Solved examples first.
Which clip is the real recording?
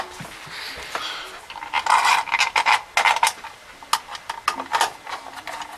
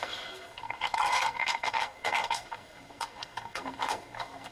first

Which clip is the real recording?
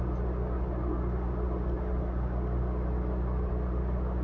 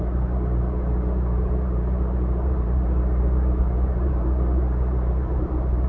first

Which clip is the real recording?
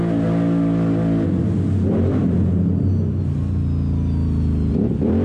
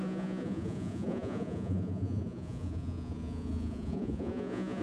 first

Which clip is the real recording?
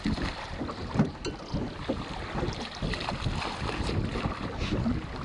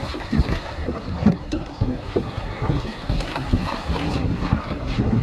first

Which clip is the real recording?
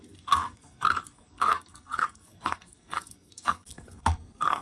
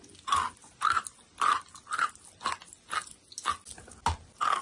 second